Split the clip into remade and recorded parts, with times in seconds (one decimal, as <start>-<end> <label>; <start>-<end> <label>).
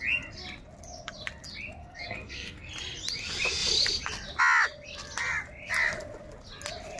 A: 0.0-1.8 recorded; 1.8-2.7 remade; 2.7-7.0 recorded